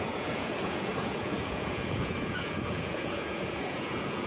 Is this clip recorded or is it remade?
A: remade